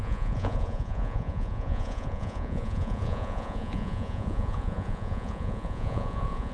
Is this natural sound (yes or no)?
no